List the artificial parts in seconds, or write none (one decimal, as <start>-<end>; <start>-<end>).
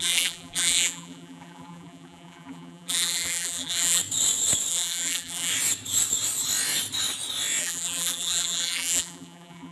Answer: 0.0-4.0; 4.7-5.5; 7.6-9.7